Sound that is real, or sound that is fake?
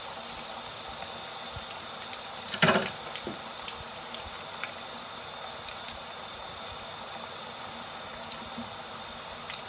real